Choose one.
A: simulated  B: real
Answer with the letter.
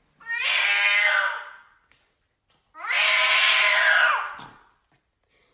B